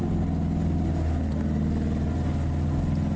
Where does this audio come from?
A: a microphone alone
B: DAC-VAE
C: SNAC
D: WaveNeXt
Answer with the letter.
A